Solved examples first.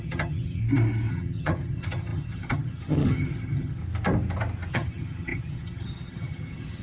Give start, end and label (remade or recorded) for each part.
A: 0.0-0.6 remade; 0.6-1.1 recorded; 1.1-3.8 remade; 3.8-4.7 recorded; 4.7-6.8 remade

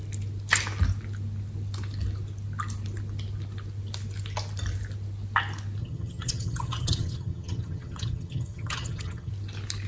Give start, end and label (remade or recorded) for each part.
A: 0.0-5.8 recorded; 5.8-9.3 remade; 9.3-9.9 recorded

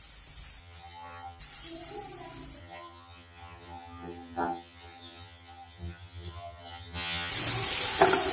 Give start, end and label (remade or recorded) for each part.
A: 0.0-0.6 recorded; 0.6-1.4 remade; 1.4-2.6 recorded; 2.6-7.3 remade; 7.3-8.3 recorded